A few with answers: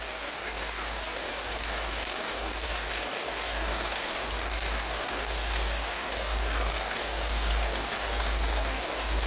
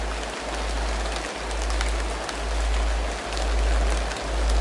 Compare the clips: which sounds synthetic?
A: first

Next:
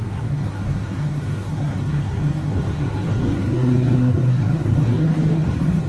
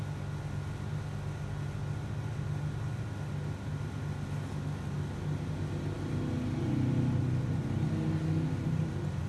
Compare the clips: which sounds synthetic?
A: first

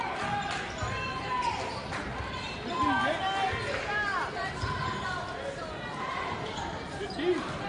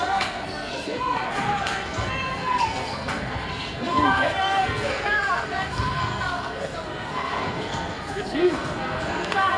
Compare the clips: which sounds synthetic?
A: second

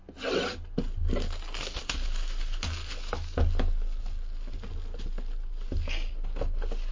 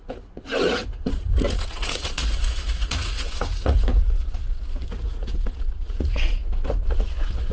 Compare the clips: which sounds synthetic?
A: second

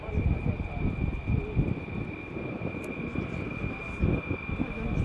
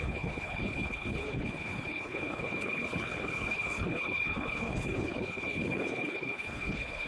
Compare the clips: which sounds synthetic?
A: second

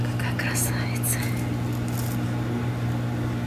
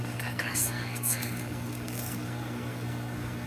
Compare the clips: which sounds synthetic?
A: second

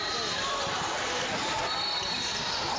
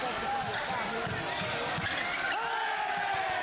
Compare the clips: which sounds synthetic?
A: first